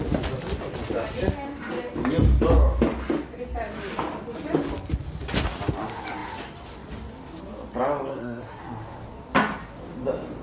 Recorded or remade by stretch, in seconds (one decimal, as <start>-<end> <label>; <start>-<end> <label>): 0.0-8.1 recorded; 8.1-8.6 remade; 8.6-10.4 recorded